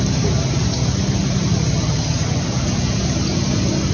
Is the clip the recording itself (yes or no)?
yes